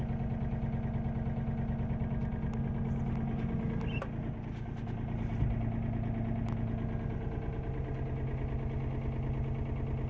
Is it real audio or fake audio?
real